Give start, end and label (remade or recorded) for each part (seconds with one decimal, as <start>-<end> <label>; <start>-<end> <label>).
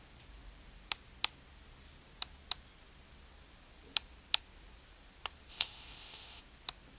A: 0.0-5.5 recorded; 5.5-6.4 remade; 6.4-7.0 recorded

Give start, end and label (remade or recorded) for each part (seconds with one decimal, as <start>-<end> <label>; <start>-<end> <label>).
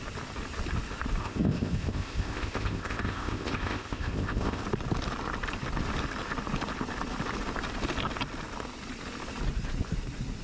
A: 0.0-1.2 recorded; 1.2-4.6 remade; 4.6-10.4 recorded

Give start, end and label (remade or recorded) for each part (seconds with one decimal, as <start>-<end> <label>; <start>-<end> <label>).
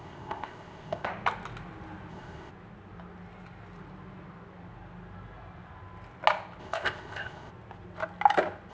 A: 0.0-1.1 remade; 1.1-2.1 recorded; 2.1-2.5 remade; 2.5-6.6 recorded; 6.6-7.5 remade; 7.5-8.7 recorded